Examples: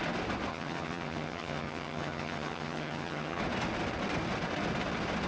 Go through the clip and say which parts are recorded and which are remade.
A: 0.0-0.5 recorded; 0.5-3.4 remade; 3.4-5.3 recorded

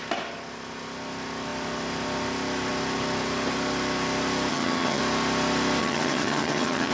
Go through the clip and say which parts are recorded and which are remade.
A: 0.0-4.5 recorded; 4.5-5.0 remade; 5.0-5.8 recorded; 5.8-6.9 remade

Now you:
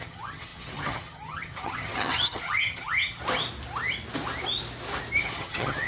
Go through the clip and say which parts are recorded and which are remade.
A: 0.0-3.2 remade; 3.2-5.2 recorded; 5.2-5.9 remade

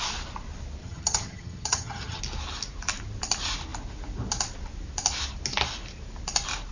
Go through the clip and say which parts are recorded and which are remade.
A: 0.0-0.8 recorded; 0.8-2.2 remade; 2.2-6.7 recorded